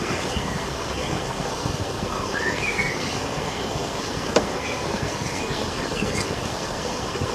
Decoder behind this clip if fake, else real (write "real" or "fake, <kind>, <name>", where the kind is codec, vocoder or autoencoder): fake, codec, SNAC